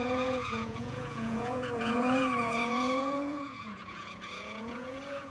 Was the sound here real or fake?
fake